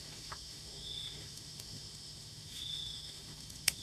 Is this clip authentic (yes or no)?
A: no